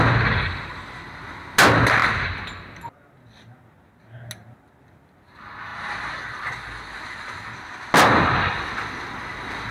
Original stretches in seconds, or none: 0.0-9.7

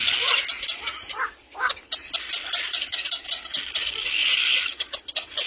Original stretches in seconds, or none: 0.0-5.5

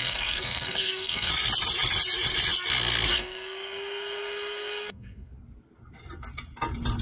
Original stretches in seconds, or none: 1.3-3.1; 5.3-7.0

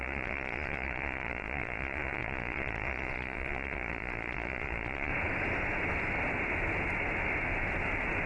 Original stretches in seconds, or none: 5.1-8.3

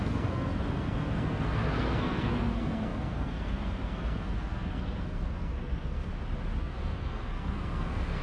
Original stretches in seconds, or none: 6.1-6.6

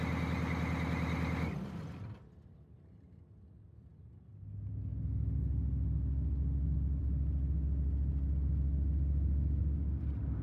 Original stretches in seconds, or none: 0.0-10.4